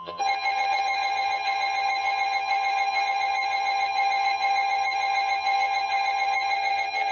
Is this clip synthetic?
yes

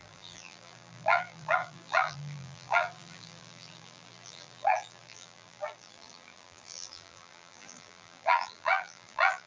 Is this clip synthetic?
yes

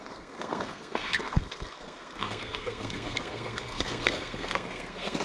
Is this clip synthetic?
yes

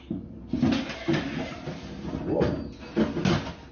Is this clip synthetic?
no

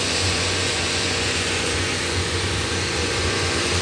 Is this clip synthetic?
yes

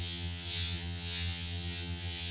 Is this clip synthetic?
yes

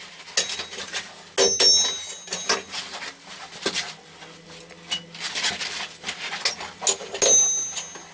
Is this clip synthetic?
no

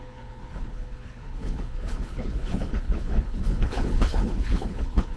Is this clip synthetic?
yes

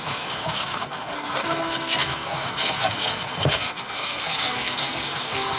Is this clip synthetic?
yes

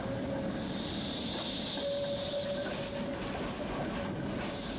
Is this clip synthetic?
no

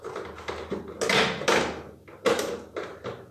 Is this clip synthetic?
no